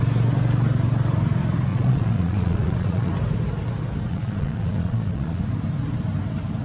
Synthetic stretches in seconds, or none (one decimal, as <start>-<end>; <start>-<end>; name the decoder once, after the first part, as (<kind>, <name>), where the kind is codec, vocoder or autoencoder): 1.7-3.1 (vocoder, Vocos); 4.1-5.4